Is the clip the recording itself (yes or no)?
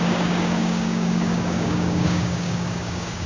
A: no